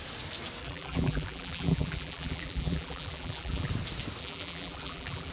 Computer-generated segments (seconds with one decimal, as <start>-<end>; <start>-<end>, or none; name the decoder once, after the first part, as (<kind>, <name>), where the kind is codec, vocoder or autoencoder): 0.6-3.7 (vocoder, BigVGAN v2); 4.2-5.3